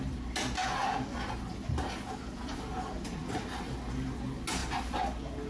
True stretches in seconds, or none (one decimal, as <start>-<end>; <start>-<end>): 0.0-5.5